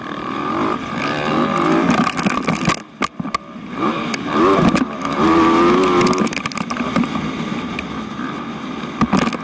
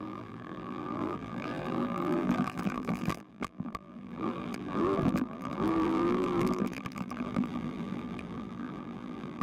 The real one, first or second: first